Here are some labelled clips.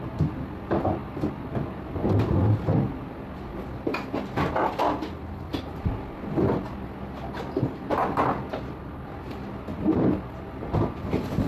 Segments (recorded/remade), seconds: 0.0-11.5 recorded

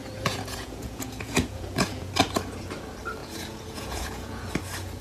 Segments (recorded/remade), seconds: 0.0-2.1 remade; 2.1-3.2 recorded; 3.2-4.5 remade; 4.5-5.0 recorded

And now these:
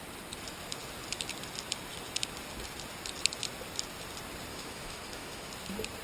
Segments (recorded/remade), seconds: 0.0-4.5 recorded; 4.5-5.5 remade; 5.5-6.0 recorded